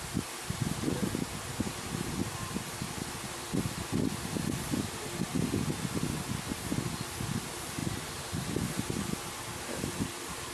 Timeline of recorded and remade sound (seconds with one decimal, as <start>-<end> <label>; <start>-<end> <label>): 0.0-10.5 recorded

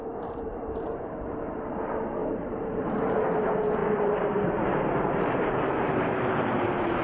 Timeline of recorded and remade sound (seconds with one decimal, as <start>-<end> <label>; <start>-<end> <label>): 0.0-1.7 remade; 1.7-2.2 recorded; 2.2-2.9 remade; 2.9-3.8 recorded; 3.8-7.0 remade

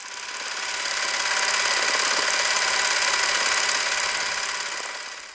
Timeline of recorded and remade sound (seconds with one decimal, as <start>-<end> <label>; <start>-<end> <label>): 0.0-5.3 recorded

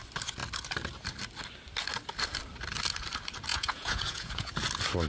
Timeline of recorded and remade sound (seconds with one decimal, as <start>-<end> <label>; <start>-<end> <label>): 0.0-3.5 recorded; 3.5-4.5 remade; 4.5-5.1 recorded

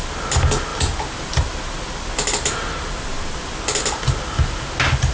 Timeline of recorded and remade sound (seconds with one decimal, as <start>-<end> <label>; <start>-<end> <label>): 0.0-5.1 recorded

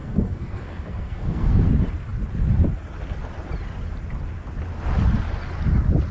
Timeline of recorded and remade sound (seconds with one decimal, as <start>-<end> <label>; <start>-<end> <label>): 0.0-1.7 remade; 1.7-6.1 recorded

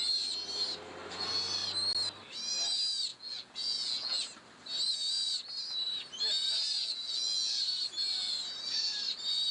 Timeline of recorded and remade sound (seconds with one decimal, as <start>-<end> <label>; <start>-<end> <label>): 0.0-3.1 recorded; 3.1-4.2 remade; 4.2-6.8 recorded; 6.8-7.6 remade; 7.6-9.5 recorded